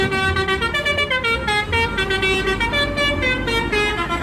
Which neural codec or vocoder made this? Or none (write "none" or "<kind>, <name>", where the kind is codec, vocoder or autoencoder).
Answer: none